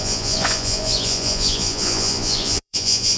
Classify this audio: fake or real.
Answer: fake